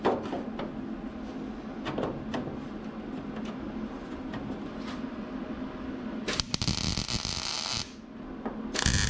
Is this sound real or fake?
real